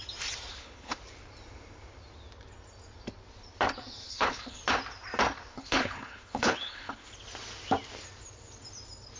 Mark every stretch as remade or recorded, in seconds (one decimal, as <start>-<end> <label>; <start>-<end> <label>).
0.0-0.5 recorded; 0.5-1.0 remade; 1.0-4.0 recorded; 4.0-4.6 remade; 4.6-5.5 recorded; 5.5-7.1 remade; 7.1-9.2 recorded